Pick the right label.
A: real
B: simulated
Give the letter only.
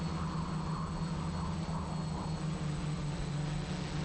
A